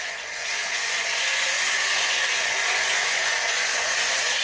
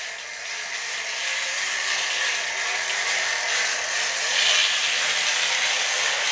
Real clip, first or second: second